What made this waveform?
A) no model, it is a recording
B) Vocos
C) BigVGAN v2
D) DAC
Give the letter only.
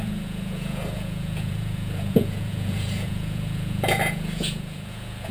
B